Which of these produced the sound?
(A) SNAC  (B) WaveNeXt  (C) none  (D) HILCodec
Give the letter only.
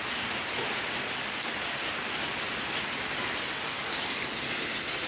C